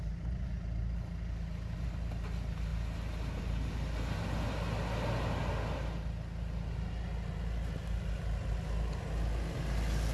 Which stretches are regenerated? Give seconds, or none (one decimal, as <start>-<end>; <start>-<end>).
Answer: none